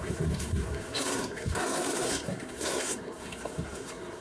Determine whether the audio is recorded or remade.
remade